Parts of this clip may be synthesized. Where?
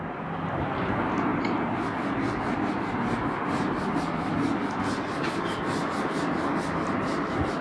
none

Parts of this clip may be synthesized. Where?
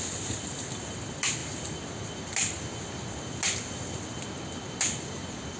none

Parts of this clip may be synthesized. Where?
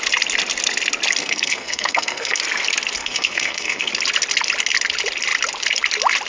1.2-2.4 (codec, SNAC); 3.0-3.9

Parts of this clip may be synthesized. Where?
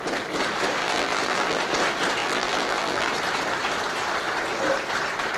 0.8-1.6 (vocoder, BigVGAN v2); 2.2-3.1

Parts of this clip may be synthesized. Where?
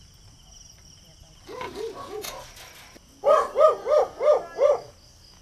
0.8-1.9 (vocoder, BigVGAN v2)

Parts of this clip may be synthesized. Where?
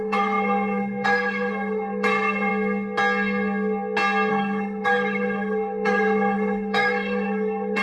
0.0-2.5 (codec, SNAC); 4.3-7.8